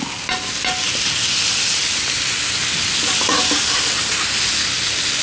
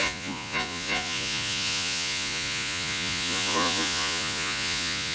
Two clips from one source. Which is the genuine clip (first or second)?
first